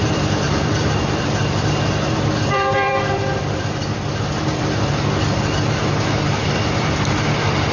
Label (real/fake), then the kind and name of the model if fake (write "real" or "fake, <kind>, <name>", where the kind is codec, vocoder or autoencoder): fake, vocoder, BigVGAN v2